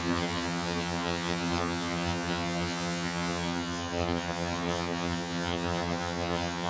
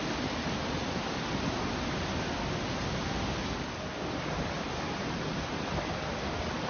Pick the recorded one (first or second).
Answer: second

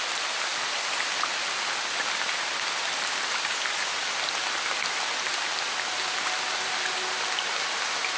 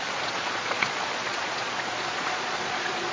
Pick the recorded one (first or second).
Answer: first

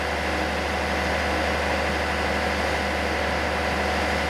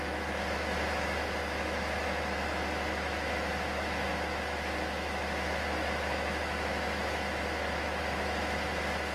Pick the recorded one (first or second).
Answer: first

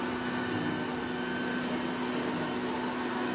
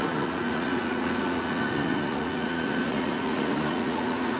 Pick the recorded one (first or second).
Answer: first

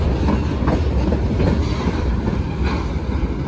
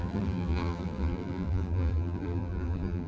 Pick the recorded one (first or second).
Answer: first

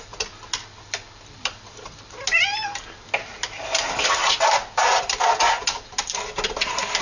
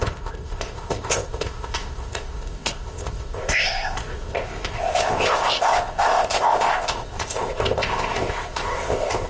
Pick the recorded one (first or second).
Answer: first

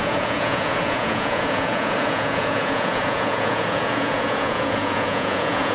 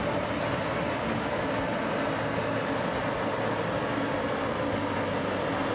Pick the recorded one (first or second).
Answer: second